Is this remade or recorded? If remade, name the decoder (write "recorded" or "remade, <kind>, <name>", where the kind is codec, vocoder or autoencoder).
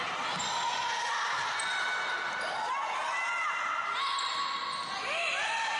recorded